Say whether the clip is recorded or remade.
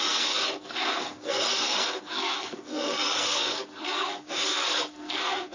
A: remade